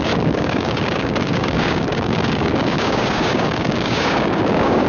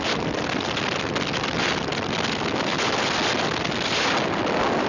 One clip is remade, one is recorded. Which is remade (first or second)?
first